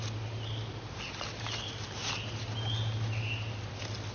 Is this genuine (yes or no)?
yes